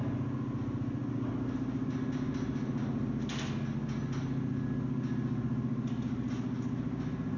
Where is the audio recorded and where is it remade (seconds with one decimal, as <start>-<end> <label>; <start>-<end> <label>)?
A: 0.0-7.4 recorded